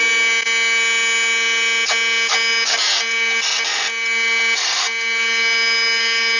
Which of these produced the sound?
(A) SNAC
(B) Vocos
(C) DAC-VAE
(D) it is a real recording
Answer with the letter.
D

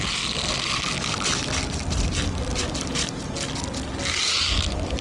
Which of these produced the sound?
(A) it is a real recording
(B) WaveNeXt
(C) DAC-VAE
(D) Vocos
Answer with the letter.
A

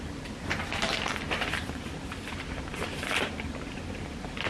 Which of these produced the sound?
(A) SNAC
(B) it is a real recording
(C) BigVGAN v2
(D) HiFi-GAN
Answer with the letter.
C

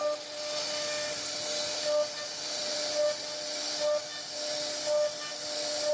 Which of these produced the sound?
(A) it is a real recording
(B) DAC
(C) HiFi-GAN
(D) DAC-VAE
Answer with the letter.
A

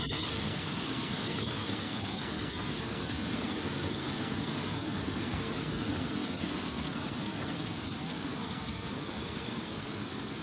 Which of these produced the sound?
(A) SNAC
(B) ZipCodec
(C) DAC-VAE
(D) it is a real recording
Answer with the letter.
A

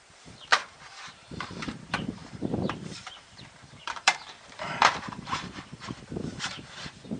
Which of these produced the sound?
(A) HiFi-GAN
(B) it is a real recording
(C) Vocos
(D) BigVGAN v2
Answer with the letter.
D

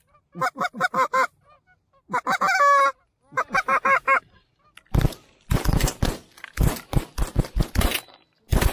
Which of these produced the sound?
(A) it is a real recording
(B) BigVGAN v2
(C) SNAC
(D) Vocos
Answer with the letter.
A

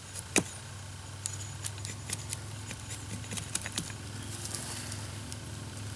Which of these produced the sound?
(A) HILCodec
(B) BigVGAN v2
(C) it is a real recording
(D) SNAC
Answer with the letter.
C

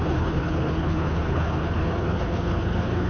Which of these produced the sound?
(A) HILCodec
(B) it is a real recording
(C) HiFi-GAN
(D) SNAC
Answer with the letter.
A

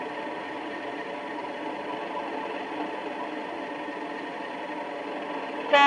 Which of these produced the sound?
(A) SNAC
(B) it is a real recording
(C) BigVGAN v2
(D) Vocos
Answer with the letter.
B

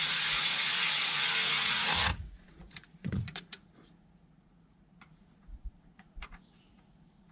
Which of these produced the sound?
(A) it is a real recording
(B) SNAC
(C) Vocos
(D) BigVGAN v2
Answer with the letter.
C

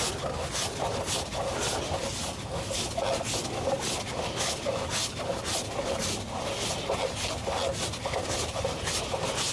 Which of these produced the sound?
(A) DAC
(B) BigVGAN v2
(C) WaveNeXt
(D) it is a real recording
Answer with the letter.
D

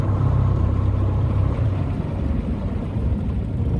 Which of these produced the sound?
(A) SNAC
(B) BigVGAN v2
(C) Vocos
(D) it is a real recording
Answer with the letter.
B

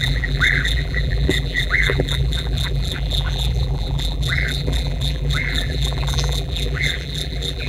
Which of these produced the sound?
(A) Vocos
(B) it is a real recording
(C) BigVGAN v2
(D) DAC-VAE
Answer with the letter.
C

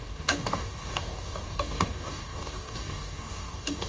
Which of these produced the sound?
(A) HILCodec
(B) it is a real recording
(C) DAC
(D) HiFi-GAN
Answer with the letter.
C